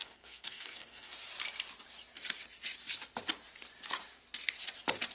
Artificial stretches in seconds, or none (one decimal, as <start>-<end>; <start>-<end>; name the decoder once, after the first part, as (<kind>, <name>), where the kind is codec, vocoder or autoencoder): 0.0-1.1 (codec, SNAC)